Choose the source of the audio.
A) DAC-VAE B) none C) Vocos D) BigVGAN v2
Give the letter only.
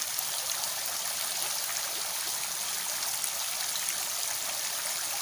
B